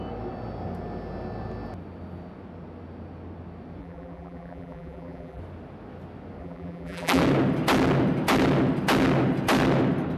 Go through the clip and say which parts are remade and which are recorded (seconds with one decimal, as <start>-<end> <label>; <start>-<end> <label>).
0.0-3.8 recorded; 3.8-5.4 remade; 5.4-6.4 recorded; 6.4-7.2 remade; 7.2-10.2 recorded